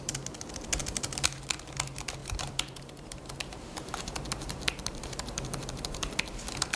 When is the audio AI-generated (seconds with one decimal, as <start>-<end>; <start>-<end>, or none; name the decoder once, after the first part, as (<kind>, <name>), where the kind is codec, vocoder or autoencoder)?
2.2-6.3 (vocoder, BigVGAN v2)